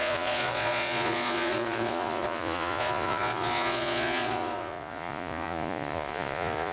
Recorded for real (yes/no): no